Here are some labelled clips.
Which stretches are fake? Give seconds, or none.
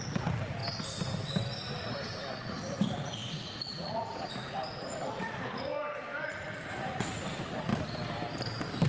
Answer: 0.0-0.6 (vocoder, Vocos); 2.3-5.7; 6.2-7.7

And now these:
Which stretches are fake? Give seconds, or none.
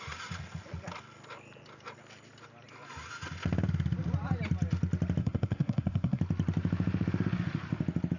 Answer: 5.2-6.2 (codec, SNAC)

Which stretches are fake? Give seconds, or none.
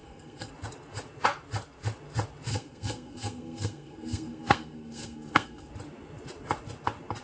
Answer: 0.0-0.5 (codec, SNAC); 2.5-5.7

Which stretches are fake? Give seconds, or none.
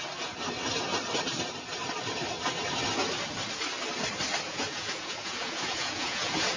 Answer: 4.5-6.6 (vocoder, Vocos)